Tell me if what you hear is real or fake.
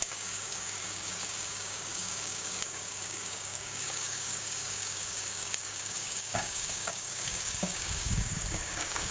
fake